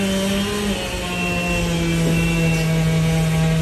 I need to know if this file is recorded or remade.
recorded